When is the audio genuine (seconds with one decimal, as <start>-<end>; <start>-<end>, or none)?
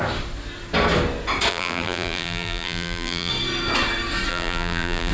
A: 0.0-1.5; 3.3-4.3